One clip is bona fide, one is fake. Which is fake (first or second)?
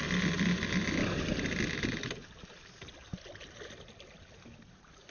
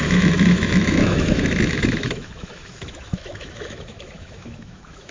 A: second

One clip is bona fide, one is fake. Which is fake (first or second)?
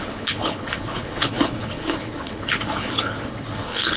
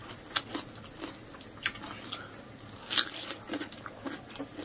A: first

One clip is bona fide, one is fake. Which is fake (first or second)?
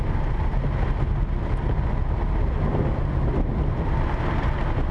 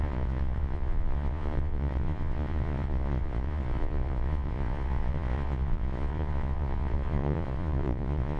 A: second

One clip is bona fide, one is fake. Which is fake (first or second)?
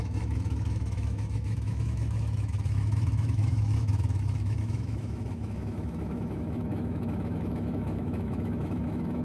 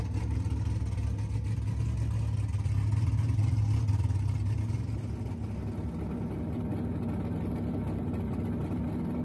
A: first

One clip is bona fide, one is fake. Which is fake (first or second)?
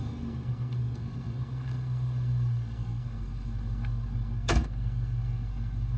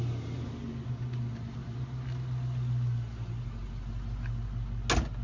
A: first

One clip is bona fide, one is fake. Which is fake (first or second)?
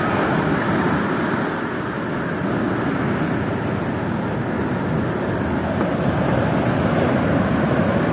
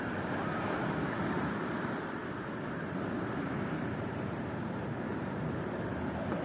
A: second